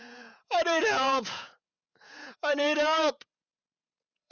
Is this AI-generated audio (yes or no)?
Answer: yes